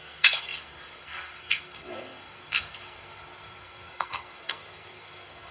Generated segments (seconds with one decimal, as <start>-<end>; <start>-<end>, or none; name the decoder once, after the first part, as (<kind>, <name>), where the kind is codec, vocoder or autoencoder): 0.0-5.5 (codec, SNAC)